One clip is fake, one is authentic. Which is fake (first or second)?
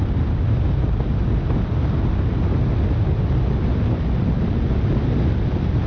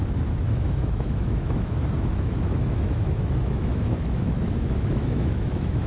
second